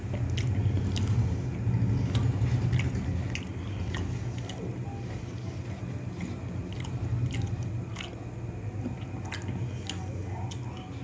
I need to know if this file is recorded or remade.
recorded